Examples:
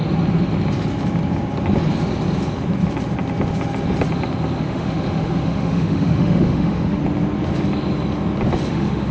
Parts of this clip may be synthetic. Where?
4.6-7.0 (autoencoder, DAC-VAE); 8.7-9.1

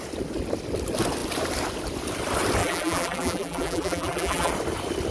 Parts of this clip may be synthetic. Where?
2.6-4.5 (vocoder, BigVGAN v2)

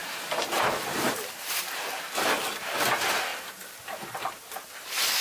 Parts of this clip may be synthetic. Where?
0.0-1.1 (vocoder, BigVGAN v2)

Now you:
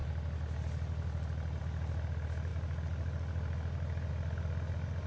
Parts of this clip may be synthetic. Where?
none

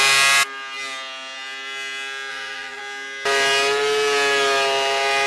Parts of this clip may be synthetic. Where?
2.3-2.8 (vocoder, BigVGAN v2)